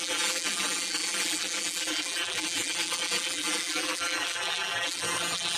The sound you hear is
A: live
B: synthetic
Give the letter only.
B